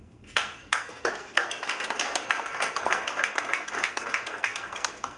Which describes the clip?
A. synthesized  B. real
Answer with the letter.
A